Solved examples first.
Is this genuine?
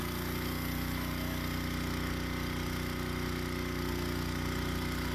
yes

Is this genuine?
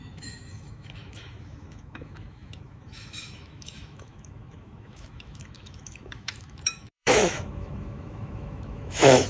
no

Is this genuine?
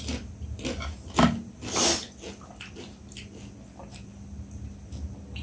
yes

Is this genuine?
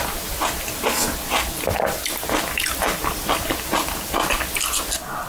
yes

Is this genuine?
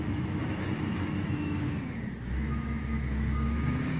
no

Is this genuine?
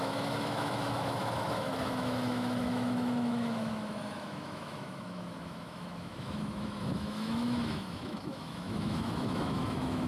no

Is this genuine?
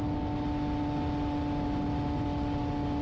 yes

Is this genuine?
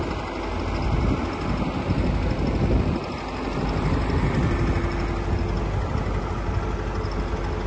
yes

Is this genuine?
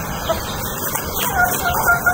yes